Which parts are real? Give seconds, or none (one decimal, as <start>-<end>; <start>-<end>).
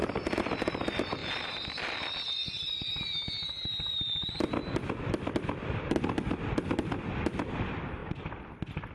0.0-1.2; 4.3-8.9